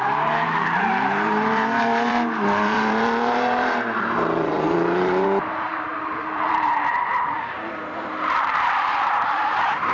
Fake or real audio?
fake